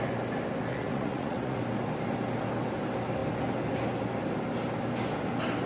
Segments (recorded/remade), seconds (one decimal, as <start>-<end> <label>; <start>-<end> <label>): 0.0-0.7 recorded; 0.7-1.6 remade; 1.6-5.7 recorded